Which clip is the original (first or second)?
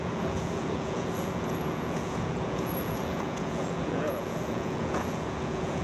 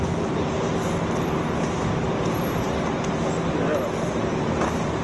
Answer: second